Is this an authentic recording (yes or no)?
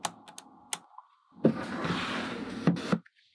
yes